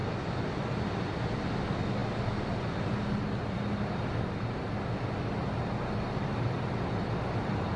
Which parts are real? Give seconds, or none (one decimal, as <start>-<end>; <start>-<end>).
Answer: 0.0-7.8